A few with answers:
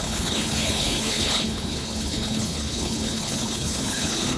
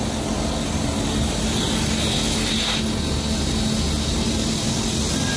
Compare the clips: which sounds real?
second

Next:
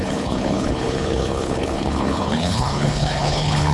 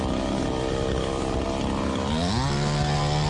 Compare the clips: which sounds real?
second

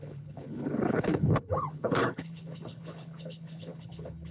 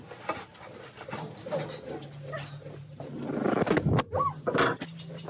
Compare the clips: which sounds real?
second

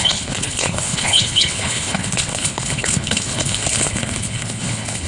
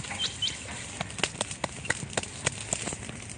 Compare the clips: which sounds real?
second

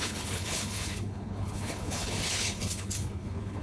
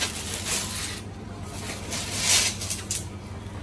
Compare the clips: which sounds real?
second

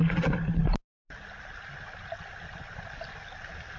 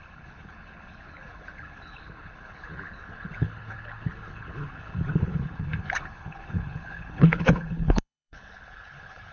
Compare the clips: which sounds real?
first